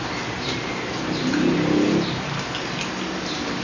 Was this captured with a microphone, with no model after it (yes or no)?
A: yes